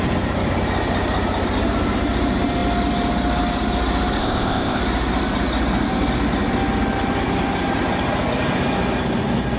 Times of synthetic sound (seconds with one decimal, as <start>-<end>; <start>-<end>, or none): 4.2-4.8